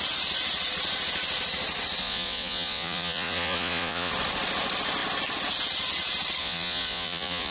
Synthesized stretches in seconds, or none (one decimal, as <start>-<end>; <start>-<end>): 2.0-4.1; 6.4-7.5